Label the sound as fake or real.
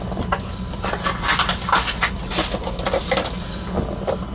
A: real